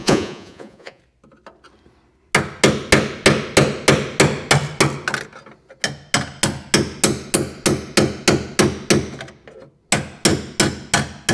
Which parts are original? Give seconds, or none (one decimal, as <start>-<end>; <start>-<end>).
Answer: 1.0-11.3